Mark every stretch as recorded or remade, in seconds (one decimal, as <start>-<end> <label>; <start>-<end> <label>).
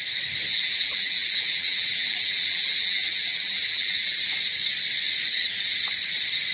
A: 0.0-0.5 recorded; 0.5-4.2 remade; 4.2-6.5 recorded